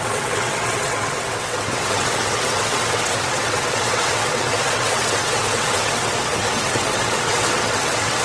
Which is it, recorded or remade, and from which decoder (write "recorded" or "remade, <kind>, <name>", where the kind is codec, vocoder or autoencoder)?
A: remade, vocoder, WaveNeXt